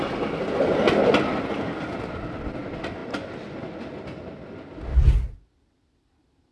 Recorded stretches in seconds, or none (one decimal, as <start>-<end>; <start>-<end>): 0.0-6.5